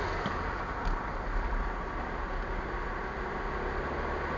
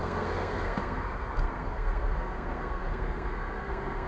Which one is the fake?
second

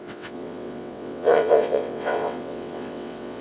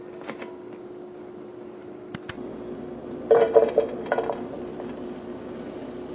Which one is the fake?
first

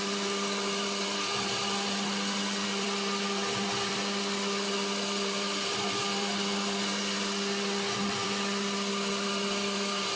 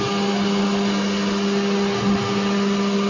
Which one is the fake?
first